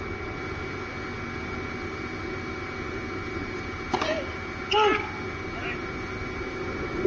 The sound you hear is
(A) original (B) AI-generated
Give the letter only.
A